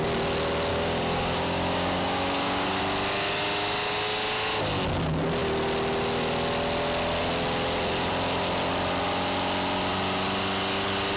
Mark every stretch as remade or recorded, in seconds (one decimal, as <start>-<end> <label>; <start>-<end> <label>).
0.0-0.7 recorded; 0.7-2.8 remade; 2.8-11.2 recorded